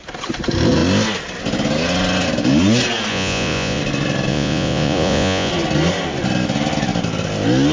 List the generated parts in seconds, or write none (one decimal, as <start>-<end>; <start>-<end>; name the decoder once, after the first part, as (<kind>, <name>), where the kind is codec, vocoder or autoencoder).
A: 3.1-3.8 (vocoder, Vocos); 4.3-5.5